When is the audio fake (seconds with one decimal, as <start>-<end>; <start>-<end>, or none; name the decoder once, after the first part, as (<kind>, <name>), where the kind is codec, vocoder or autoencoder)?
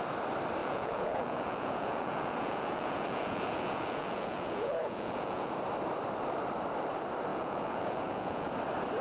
0.6-5.5 (vocoder, Vocos); 7.3-8.5